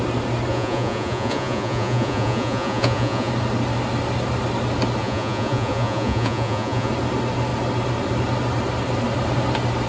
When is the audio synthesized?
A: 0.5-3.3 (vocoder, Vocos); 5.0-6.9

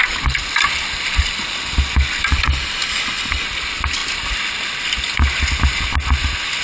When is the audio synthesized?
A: none